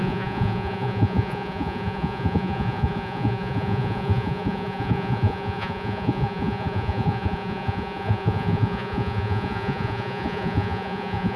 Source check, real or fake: fake